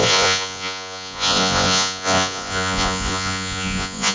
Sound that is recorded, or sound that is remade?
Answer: remade